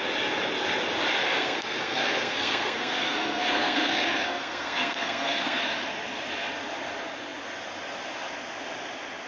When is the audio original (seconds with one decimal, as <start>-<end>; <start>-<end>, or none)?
0.0-1.2; 5.6-9.3